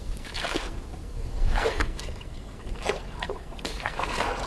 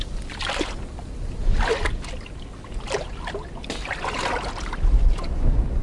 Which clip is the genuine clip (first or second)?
second